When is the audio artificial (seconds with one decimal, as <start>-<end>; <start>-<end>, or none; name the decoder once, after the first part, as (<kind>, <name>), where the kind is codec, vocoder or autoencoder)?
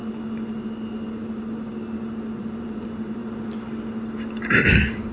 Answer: 2.4-3.2 (vocoder, BigVGAN v2); 4.5-5.1